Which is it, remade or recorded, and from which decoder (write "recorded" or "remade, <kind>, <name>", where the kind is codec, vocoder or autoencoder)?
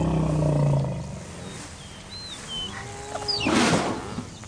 recorded